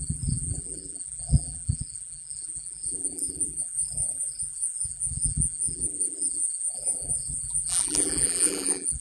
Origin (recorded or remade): remade